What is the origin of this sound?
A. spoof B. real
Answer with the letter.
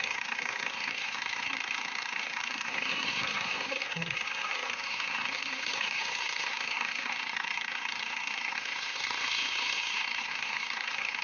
A